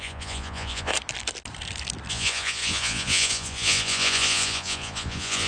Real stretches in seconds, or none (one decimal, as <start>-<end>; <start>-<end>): 0.9-2.1